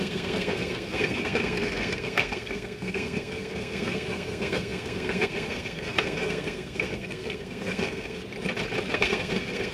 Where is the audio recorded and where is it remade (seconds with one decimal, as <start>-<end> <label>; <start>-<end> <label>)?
0.0-8.2 remade; 8.2-8.9 recorded; 8.9-9.7 remade